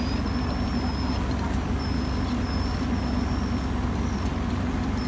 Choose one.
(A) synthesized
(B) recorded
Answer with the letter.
B